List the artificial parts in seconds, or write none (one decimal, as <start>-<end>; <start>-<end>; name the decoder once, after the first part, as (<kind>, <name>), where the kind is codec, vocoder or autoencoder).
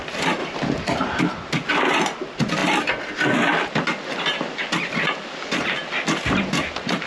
0.4-1.2 (vocoder, BigVGAN v2)